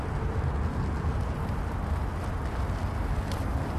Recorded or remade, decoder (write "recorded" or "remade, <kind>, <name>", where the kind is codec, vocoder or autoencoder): recorded